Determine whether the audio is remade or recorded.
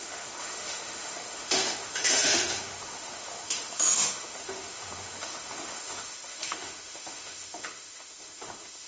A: remade